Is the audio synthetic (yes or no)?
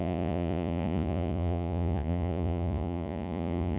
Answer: yes